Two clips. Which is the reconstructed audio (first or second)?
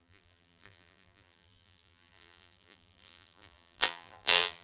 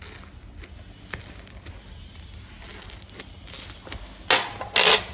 first